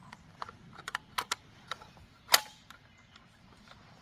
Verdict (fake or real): fake